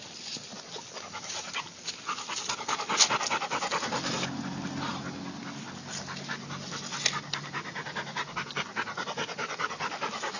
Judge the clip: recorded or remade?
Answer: recorded